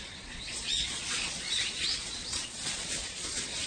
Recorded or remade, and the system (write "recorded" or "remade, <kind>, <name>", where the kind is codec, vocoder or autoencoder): remade, vocoder, Vocos